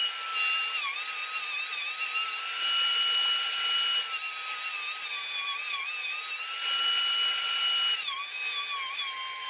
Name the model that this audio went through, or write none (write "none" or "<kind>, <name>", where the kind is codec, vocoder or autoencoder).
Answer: none